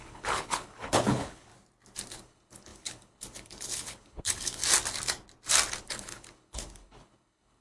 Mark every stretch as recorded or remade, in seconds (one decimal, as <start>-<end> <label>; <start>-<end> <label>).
0.0-1.5 remade; 1.5-2.1 recorded; 2.1-4.6 remade; 4.6-5.8 recorded; 5.8-7.6 remade